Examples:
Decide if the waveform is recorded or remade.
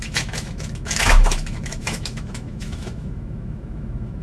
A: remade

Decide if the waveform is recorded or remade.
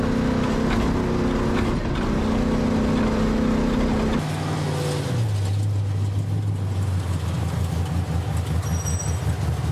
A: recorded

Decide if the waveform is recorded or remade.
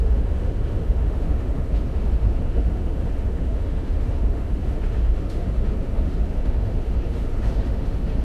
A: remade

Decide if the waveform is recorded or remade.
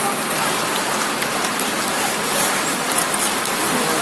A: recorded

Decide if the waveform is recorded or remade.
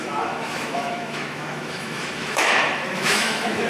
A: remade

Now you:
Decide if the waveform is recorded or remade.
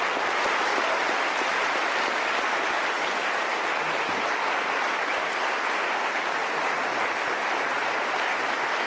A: recorded